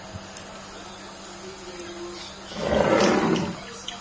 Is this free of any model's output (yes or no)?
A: yes